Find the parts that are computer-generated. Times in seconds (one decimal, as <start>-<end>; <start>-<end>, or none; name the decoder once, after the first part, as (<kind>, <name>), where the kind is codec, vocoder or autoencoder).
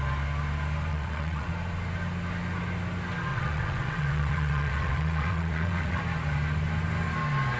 0.9-1.5 (vocoder, WaveNeXt); 3.3-6.0